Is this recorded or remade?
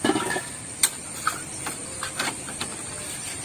recorded